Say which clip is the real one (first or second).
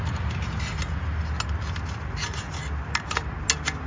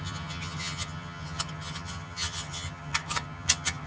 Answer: first